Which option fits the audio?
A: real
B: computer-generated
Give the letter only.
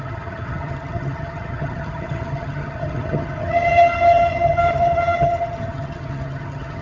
B